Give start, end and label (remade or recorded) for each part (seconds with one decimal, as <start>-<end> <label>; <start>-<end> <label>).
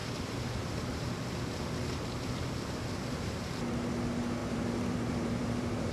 0.0-3.5 remade; 3.5-4.4 recorded; 4.4-5.9 remade